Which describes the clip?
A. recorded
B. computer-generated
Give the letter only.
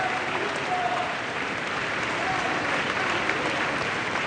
A